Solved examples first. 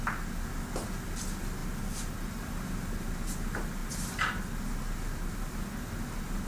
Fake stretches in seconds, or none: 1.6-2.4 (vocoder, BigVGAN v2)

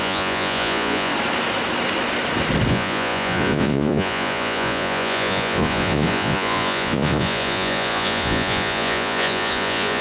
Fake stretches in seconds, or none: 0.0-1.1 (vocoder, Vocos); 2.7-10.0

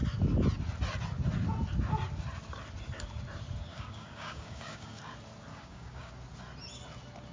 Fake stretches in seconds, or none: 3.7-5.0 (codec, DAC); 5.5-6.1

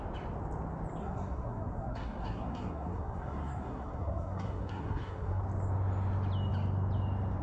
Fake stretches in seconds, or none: 1.0-5.4 (codec, SNAC)